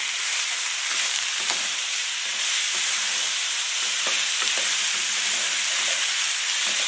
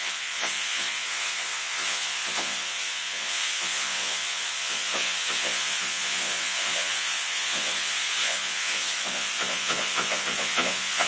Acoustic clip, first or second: first